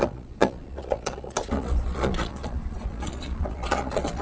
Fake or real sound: fake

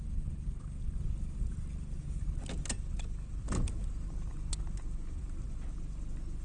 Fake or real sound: real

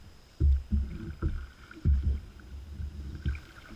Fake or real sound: real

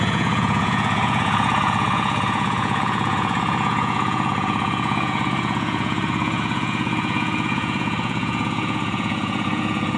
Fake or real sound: fake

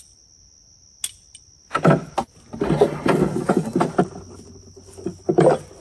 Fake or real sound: real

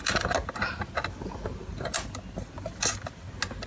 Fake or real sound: real